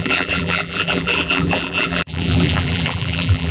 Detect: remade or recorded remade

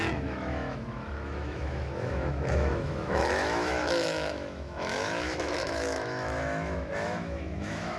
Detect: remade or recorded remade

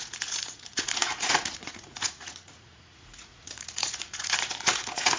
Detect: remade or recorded remade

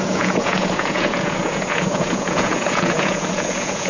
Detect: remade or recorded remade